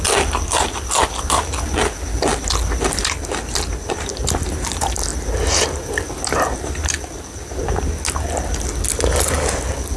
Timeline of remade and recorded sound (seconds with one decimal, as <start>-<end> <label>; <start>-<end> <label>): 0.0-10.0 recorded